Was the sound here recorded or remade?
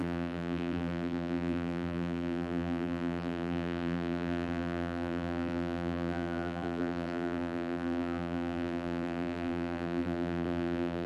remade